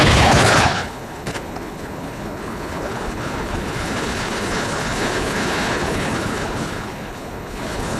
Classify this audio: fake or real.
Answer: fake